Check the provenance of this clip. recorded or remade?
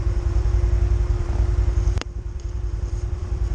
remade